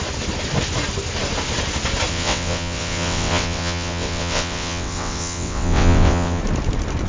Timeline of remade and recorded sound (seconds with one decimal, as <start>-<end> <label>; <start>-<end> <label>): 0.0-2.1 recorded; 2.1-6.4 remade; 6.4-7.1 recorded